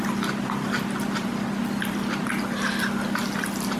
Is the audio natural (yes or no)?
yes